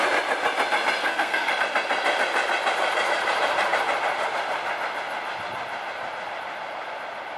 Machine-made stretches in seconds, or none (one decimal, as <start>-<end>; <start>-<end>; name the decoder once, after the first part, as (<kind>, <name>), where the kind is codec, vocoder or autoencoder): 1.0-1.5 (codec, SNAC)